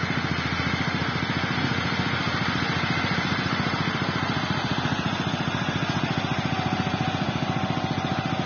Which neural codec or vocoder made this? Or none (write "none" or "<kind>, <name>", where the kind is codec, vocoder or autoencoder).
none